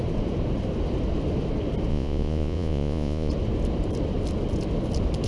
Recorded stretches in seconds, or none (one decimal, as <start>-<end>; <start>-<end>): 0.0-1.9; 3.3-5.3